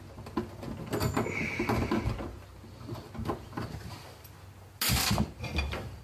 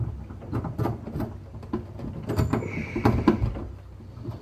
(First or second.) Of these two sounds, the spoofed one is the second